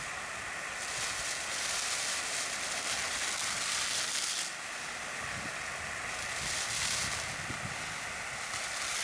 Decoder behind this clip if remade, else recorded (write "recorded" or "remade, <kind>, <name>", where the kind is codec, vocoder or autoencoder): recorded